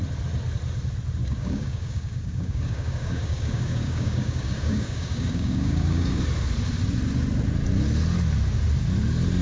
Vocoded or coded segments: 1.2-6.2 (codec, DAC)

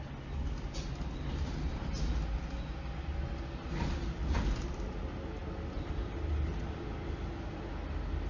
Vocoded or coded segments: none

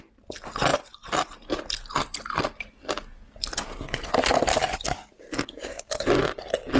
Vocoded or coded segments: 4.5-6.2 (codec, DAC)

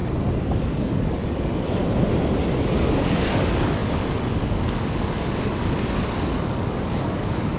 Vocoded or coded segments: 0.5-1.8 (codec, DAC); 2.8-7.6

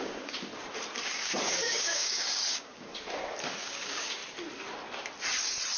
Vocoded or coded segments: 0.0-0.5 (codec, DAC); 1.0-2.9; 3.6-4.2

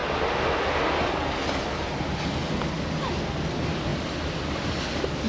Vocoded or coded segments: none

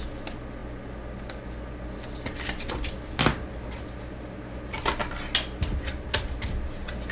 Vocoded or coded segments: none